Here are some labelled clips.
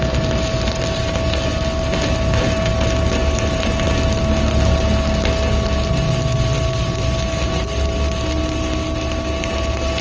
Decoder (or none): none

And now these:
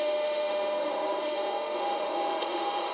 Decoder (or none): autoencoder, DAC-VAE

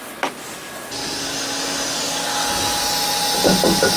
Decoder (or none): none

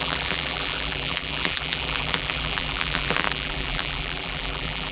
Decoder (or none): vocoder, BigVGAN v2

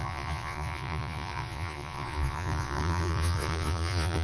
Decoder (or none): vocoder, Vocos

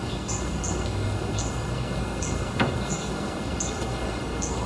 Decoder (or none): codec, SNAC